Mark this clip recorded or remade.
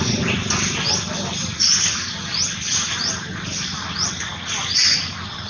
recorded